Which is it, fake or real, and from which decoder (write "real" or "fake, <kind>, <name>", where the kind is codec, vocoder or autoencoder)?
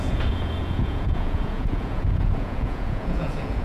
fake, vocoder, Vocos